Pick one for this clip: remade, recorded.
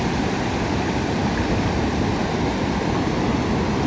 recorded